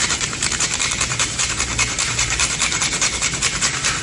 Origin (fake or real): fake